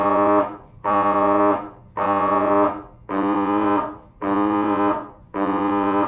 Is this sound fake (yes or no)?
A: yes